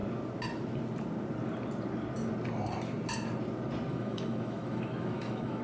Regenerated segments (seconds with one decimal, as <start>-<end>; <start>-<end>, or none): 3.9-5.6